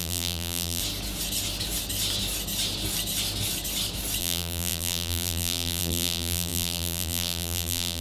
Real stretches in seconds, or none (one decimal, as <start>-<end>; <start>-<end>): 0.8-4.2